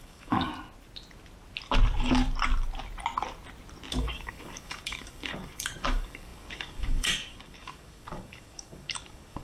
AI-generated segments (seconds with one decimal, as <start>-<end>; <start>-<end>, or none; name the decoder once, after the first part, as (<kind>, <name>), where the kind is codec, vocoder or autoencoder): 0.0-0.5 (codec, DAC); 4.0-9.4